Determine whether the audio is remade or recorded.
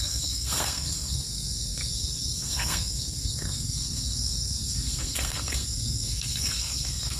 remade